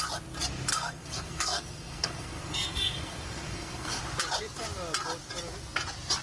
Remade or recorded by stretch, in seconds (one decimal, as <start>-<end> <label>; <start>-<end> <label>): 0.0-0.7 recorded; 0.7-4.0 remade; 4.0-6.2 recorded